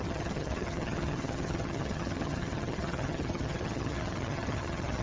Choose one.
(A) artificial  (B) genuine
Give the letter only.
A